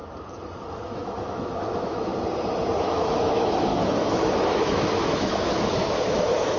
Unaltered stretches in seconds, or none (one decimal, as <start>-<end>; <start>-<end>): 0.0-0.7; 2.1-2.8